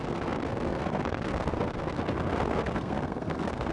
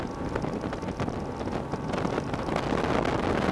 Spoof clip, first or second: first